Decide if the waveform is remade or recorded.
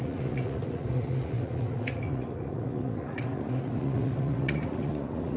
remade